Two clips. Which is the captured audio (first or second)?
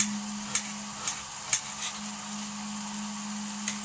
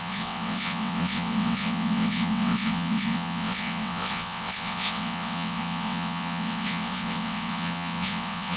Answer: first